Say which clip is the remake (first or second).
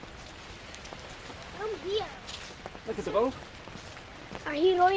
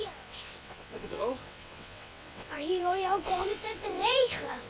second